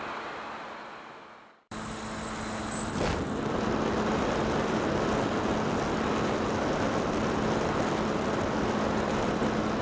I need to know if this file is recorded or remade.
recorded